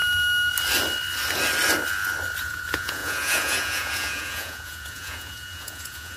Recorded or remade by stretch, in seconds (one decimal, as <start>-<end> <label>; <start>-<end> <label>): 0.0-2.4 recorded; 2.4-6.2 remade